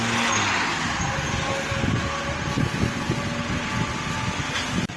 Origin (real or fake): real